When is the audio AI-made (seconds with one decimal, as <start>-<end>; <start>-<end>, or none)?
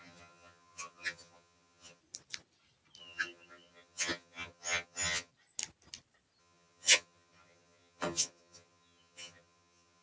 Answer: 0.0-2.0; 3.0-5.3; 6.4-10.0